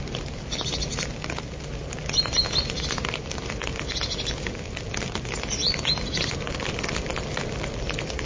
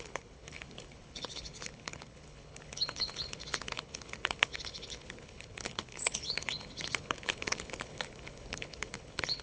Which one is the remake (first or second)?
second